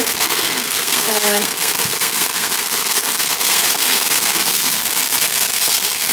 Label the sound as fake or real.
fake